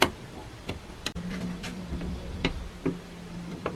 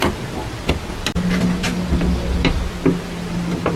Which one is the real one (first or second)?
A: second